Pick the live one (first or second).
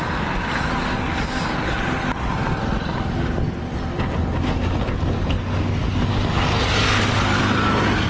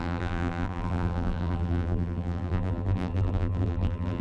first